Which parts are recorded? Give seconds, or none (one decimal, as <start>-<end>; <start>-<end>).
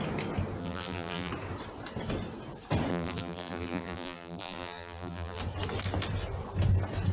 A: 0.0-0.6; 1.3-2.9; 5.4-7.1